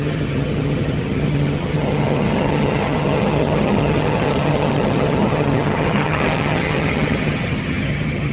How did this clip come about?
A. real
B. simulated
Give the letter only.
B